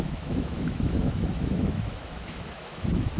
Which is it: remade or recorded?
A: remade